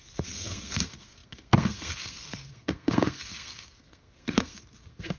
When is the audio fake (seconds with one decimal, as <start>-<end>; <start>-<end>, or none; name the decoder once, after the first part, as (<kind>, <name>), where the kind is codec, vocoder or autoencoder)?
0.0-5.2 (codec, SNAC)

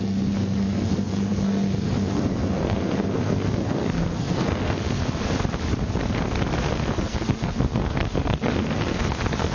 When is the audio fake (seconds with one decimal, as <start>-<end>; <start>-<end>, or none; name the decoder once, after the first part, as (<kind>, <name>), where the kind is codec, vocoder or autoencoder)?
0.0-5.0 (codec, SNAC); 6.6-9.5

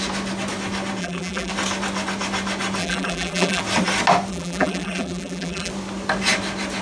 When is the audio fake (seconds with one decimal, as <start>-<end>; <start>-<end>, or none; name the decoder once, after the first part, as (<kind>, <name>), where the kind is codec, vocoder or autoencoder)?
1.0-1.5 (vocoder, BigVGAN v2); 2.8-3.6; 4.3-5.7

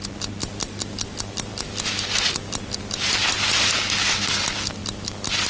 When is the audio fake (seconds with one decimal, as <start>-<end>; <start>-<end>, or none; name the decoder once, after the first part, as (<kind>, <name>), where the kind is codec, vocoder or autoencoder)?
none

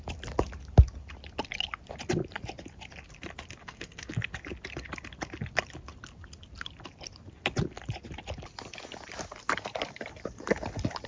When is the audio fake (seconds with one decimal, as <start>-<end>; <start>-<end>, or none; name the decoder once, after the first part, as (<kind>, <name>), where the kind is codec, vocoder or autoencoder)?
3.6-4.1 (codec, SNAC)

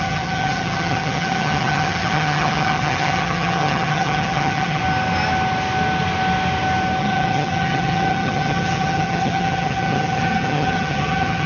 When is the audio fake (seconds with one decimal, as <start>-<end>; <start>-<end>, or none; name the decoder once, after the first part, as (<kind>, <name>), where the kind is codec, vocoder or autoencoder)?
0.0-4.8 (vocoder, HiFi-GAN); 7.0-11.5

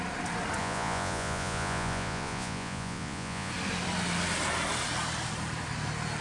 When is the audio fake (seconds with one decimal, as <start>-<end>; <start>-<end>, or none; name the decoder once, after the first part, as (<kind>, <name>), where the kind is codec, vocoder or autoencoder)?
0.6-3.5 (vocoder, Vocos)

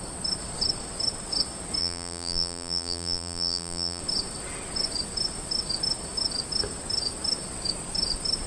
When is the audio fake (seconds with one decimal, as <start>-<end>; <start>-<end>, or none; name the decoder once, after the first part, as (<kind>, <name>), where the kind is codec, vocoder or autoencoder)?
1.8-4.0 (vocoder, BigVGAN v2)